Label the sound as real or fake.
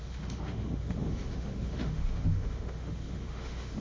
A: fake